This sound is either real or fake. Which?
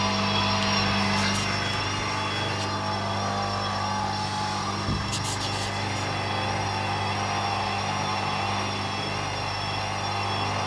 real